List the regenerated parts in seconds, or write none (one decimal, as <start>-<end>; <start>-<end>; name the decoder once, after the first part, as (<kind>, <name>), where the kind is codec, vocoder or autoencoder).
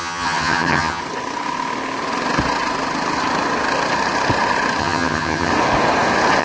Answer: 0.0-1.0 (vocoder, HiFi-GAN); 4.8-5.5